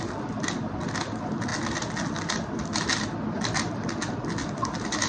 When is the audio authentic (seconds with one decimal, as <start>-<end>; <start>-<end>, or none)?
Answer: 0.0-5.1